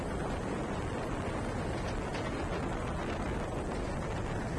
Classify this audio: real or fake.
real